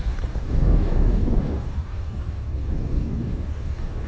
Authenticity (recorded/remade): remade